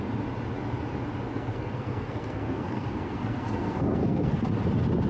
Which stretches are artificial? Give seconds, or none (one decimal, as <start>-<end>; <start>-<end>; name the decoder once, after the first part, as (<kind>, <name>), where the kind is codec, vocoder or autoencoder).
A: 1.3-4.4 (codec, SNAC)